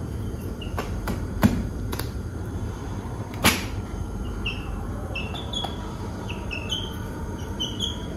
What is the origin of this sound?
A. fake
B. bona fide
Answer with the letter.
A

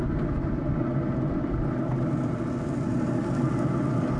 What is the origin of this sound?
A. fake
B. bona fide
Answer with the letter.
B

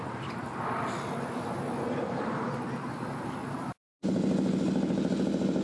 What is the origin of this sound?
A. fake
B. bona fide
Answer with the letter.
B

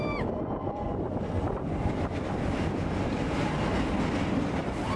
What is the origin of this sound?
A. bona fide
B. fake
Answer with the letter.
A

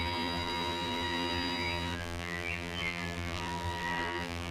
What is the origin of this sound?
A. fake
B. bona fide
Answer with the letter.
A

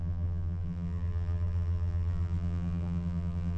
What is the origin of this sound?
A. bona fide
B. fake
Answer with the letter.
B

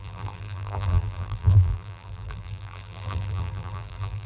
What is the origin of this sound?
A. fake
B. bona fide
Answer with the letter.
A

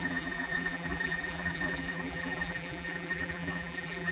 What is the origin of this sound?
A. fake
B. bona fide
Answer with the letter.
A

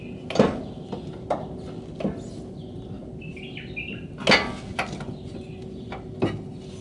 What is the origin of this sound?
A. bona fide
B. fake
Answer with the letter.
A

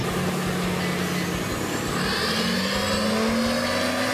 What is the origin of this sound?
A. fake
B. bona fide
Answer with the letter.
B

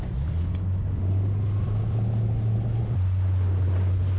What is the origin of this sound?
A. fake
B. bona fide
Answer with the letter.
B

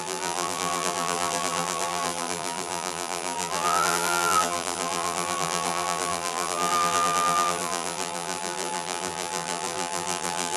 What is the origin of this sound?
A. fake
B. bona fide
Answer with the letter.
A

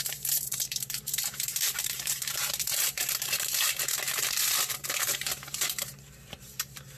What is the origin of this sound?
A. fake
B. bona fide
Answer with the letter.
A